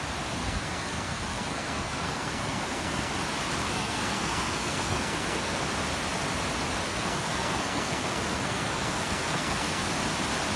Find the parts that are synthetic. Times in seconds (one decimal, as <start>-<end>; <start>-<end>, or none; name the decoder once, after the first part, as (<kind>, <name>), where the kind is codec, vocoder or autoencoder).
0.4-3.1 (codec, SNAC); 3.6-5.6; 6.9-9.9